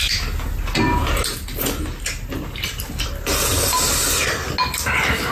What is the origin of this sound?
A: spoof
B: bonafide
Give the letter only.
B